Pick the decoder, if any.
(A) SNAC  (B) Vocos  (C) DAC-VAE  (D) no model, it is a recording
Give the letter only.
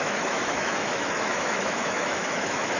C